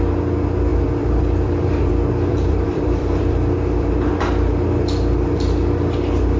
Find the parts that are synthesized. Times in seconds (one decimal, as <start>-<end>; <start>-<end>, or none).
0.7-1.9; 2.3-3.9

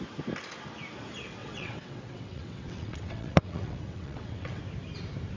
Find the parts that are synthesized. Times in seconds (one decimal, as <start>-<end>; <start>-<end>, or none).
1.4-4.6

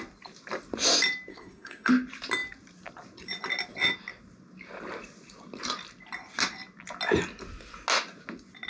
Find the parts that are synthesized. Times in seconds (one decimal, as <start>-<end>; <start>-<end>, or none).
1.3-1.9

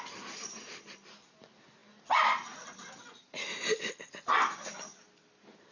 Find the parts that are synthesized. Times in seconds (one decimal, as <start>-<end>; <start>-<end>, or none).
none

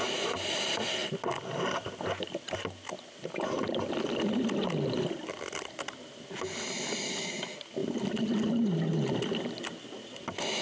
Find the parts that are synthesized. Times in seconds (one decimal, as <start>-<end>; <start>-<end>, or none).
none

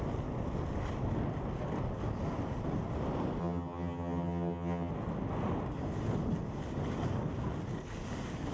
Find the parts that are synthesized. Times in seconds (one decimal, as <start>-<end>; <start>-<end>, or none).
3.4-4.9

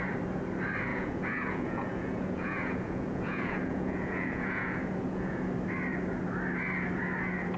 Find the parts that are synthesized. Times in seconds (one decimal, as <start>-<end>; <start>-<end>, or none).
0.9-5.5